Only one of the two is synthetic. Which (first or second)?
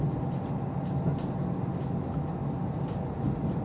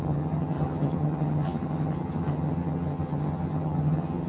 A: second